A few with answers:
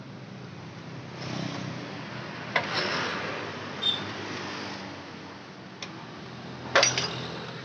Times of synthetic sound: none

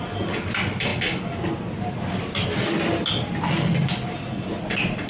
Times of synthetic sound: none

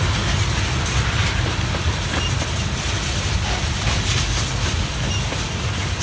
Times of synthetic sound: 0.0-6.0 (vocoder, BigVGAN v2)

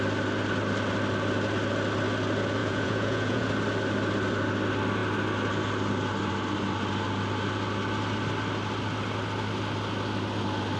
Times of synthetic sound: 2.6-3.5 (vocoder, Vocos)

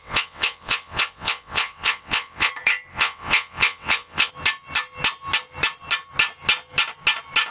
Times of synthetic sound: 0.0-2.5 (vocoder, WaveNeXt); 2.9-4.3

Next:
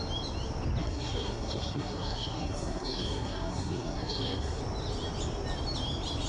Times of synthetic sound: 0.8-4.6 (codec, SNAC)